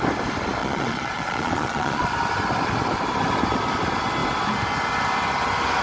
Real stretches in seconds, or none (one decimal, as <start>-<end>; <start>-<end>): 0.0-0.6; 2.1-5.8